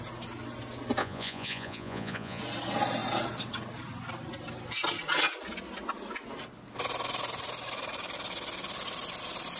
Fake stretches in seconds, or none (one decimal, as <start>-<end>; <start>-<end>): 1.0-2.4